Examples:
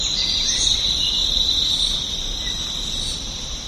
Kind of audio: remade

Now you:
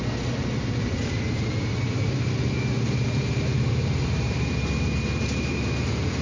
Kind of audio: remade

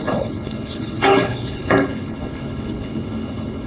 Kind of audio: remade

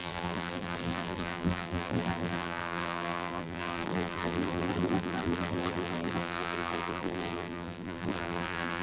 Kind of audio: remade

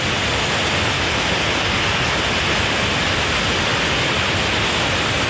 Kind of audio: recorded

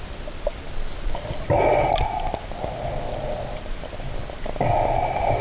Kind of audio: recorded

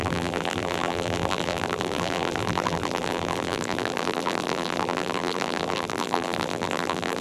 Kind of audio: remade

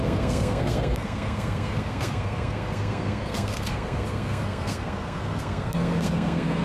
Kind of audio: remade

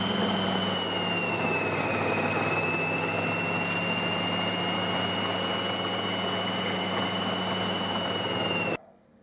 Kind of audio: recorded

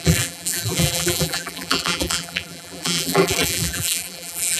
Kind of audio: remade